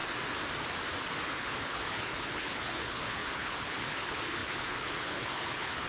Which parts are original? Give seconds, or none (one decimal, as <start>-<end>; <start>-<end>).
0.0-1.2